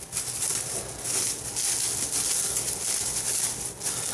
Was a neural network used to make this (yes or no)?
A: no